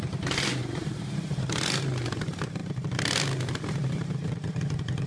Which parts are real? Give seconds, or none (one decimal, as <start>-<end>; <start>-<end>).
0.0-0.6; 1.8-3.8